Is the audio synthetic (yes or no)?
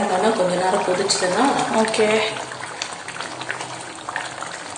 no